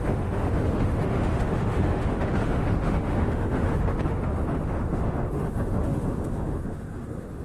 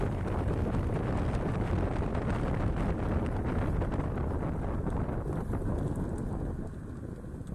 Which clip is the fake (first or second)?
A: first